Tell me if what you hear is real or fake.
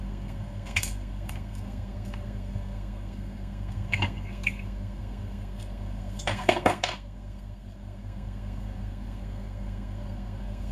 fake